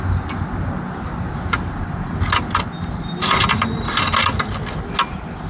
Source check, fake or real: real